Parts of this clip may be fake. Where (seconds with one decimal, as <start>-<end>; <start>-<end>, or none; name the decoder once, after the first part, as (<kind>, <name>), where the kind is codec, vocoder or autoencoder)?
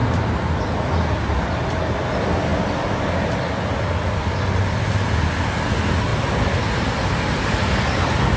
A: none